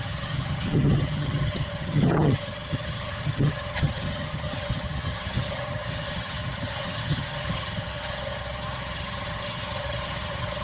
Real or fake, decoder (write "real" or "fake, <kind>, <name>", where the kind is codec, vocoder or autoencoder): fake, vocoder, HiFi-GAN